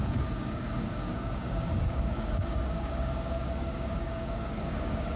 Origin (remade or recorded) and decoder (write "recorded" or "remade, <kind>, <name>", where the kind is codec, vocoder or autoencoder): remade, codec, DAC